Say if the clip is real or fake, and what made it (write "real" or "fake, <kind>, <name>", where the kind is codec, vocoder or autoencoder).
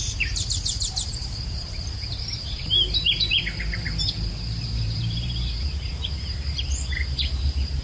fake, vocoder, BigVGAN v2